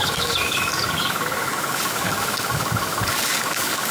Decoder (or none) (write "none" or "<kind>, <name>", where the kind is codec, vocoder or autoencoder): codec, DAC